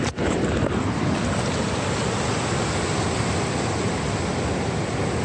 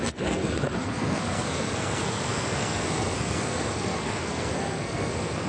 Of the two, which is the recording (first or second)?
first